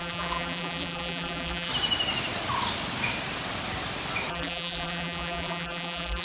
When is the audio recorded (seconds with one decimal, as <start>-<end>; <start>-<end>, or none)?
1.7-4.3